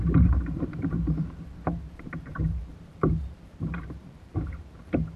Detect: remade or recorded remade